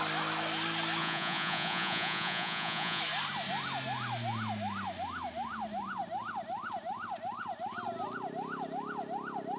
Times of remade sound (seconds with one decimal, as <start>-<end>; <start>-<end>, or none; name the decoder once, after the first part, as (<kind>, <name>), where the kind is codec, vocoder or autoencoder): 1.0-3.0 (vocoder, Vocos)